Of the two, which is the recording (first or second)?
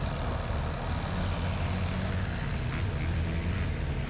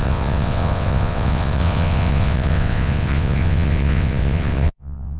first